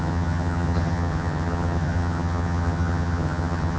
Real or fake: fake